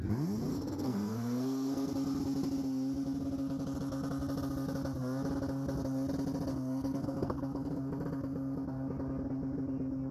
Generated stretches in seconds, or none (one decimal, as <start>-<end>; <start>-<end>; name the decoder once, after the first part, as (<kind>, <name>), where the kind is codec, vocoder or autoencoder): 0.5-1.9 (codec, SNAC); 6.5-7.8